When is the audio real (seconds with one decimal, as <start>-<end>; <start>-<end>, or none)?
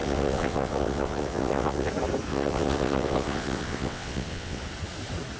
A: 1.9-2.3; 4.6-5.4